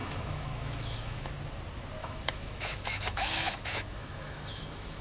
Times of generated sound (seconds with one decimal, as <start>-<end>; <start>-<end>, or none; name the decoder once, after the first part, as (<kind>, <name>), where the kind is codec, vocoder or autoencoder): 0.0-1.3 (autoencoder, DAC-VAE); 2.0-5.0